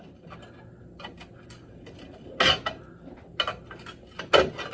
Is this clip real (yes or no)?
yes